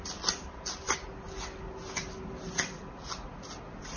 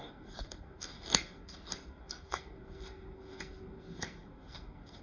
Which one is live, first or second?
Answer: first